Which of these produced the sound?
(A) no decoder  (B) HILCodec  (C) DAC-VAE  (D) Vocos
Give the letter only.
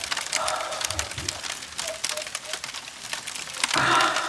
A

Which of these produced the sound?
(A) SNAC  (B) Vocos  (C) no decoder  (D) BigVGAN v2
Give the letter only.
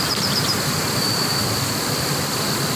D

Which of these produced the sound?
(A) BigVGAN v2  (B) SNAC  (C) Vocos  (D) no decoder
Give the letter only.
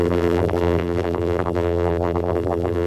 A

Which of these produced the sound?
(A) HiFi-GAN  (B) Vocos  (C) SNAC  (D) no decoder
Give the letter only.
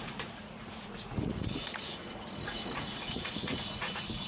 B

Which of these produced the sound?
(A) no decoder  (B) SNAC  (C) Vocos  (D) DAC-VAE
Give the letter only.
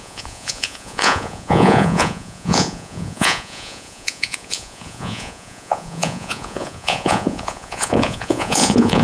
C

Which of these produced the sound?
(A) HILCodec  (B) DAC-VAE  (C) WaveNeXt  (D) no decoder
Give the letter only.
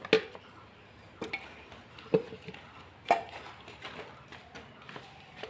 D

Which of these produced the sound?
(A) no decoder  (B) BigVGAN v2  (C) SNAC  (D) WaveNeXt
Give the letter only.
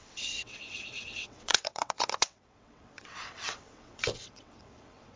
D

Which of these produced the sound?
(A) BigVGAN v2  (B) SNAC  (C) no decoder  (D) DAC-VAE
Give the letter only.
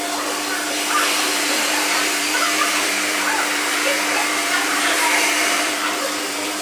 A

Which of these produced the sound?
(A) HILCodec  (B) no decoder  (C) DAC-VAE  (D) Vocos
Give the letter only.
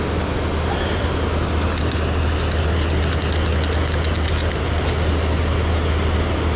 B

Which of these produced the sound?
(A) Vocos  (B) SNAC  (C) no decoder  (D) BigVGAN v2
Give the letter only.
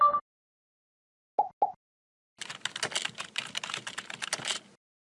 C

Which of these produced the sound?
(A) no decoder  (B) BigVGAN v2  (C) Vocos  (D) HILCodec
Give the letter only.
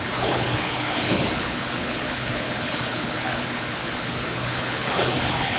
D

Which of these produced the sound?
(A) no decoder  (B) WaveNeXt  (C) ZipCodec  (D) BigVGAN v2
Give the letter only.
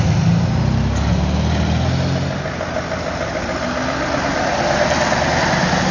A